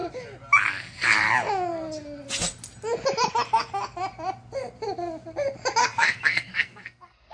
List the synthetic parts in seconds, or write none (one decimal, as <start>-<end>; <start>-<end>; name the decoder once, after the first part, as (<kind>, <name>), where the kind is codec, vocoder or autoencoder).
5.8-7.3 (codec, SNAC)